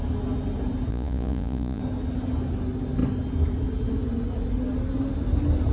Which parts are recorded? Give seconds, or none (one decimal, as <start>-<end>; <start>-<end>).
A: 0.0-0.9; 1.8-5.7